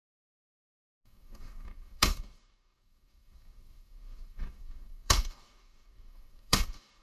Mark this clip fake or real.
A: fake